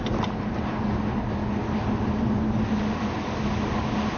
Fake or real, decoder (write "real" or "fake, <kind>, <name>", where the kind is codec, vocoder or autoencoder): real